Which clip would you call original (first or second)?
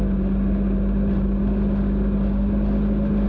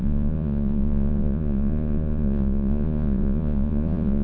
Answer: first